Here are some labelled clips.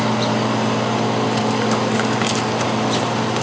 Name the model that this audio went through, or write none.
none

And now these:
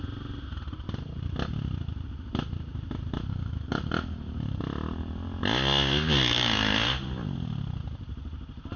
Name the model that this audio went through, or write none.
none